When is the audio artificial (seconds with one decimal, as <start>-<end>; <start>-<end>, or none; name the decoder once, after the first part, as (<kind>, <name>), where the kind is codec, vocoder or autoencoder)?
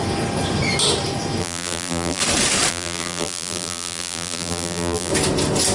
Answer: 1.4-2.2 (vocoder, BigVGAN v2); 2.7-5.1